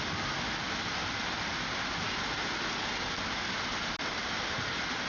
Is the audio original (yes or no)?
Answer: yes